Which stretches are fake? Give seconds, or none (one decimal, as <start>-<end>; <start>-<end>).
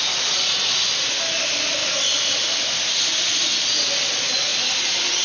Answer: 1.8-2.9; 4.5-5.2